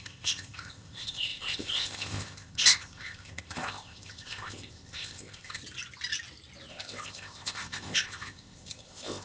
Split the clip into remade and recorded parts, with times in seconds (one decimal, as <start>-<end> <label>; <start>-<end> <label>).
0.0-5.6 remade; 5.6-6.7 recorded; 6.7-9.2 remade

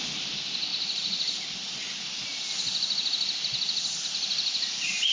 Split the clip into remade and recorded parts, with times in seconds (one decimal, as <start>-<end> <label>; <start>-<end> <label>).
0.0-5.1 recorded

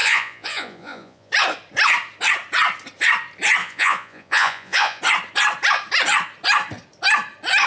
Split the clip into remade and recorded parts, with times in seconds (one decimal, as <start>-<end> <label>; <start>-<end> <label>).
0.0-1.3 remade; 1.3-3.6 recorded; 3.6-5.0 remade; 5.0-7.7 recorded

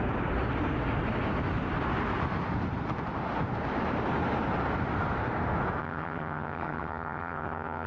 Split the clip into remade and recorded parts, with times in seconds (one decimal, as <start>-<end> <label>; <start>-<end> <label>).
0.0-5.8 recorded; 5.8-7.9 remade

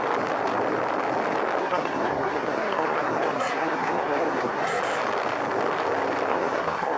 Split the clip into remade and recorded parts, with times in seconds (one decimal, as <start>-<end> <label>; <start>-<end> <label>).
0.0-1.6 recorded; 1.6-4.8 remade; 4.8-6.3 recorded; 6.3-7.0 remade

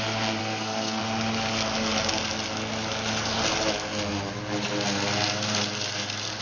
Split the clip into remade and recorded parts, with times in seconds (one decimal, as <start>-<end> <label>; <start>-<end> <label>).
0.0-0.4 recorded; 0.4-1.0 remade; 1.0-6.4 recorded

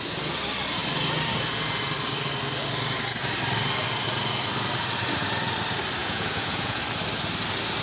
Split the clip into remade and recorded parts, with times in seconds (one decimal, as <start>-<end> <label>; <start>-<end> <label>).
0.0-6.0 recorded; 6.0-6.8 remade; 6.8-7.8 recorded